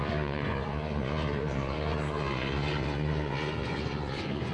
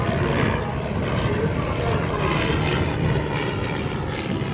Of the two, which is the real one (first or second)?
second